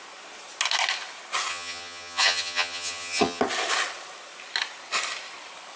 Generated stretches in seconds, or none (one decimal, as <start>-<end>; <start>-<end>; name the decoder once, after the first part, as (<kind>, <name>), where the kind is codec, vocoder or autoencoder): 1.5-3.4 (vocoder, HiFi-GAN)